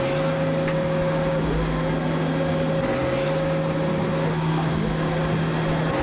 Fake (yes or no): no